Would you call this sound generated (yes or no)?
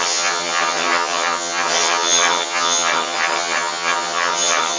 yes